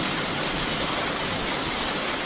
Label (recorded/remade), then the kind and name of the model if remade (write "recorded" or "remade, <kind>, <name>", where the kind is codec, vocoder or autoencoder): recorded